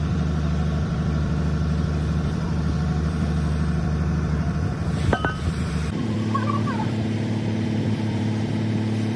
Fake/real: fake